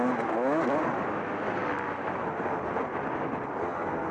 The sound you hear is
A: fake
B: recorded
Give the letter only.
B